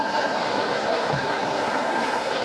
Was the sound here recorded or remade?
remade